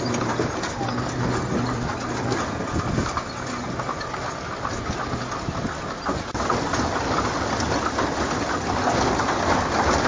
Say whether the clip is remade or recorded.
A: recorded